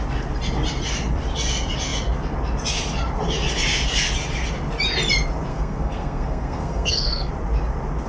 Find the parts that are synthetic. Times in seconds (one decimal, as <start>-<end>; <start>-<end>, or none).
5.5-7.3